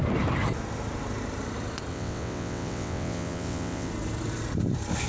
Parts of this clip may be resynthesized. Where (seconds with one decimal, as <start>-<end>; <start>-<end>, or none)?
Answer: 1.9-3.9

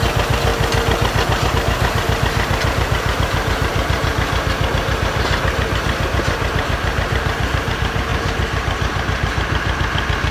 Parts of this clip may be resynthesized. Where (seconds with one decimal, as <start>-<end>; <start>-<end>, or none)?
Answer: 0.0-0.5; 1.5-4.1; 4.7-10.3

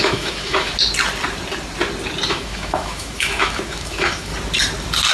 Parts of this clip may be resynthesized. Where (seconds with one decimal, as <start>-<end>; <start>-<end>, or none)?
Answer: 0.0-0.7; 2.3-4.3